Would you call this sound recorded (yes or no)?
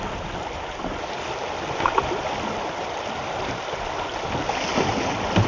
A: yes